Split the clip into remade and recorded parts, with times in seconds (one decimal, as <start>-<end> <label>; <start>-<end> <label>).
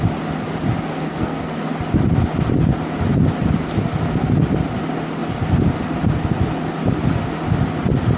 0.0-0.9 recorded; 0.9-1.7 remade; 1.7-8.2 recorded